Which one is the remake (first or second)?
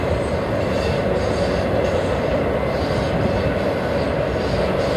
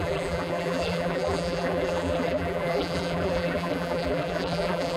second